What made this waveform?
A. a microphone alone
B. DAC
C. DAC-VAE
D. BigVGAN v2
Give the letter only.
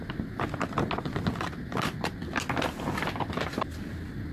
A